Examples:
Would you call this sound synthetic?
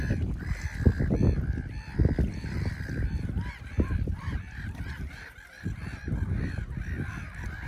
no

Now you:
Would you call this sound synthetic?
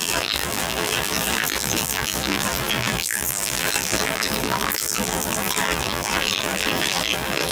yes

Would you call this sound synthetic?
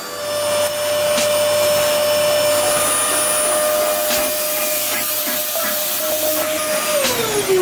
no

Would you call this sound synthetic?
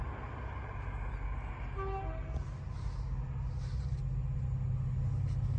no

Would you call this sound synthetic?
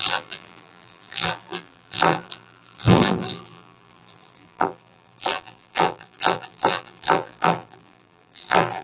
yes